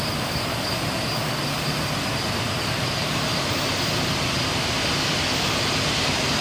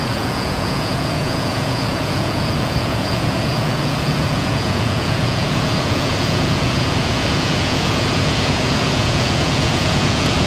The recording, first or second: first